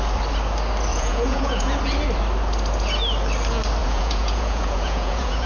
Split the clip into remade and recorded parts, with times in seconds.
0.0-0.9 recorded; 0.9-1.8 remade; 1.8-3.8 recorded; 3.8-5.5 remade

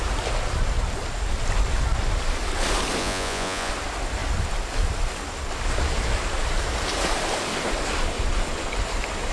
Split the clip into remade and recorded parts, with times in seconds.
0.0-3.0 recorded; 3.0-3.7 remade; 3.7-9.3 recorded

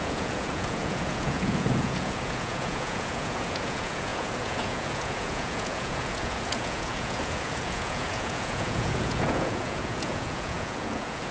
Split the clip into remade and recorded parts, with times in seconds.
0.0-11.3 remade

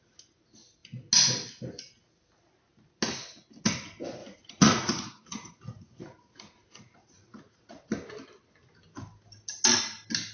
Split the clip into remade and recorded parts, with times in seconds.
0.0-4.2 recorded; 4.2-7.9 remade; 7.9-10.3 recorded